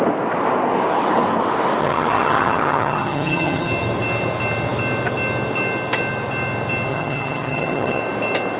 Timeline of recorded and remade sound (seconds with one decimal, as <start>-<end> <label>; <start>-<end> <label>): 0.0-1.8 recorded; 1.8-3.7 remade; 3.7-6.9 recorded; 6.9-8.0 remade; 8.0-8.6 recorded